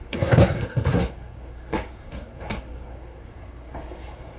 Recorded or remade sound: remade